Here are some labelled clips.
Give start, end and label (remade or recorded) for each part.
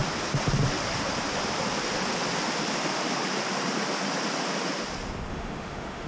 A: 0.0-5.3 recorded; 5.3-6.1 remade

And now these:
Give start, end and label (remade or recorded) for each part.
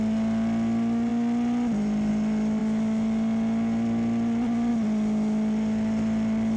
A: 0.0-6.6 recorded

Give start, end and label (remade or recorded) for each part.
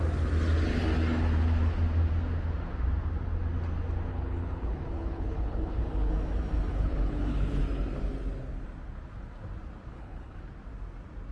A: 0.0-4.1 recorded; 4.1-6.1 remade; 6.1-6.7 recorded; 6.7-7.6 remade; 7.6-9.9 recorded; 9.9-10.4 remade; 10.4-11.3 recorded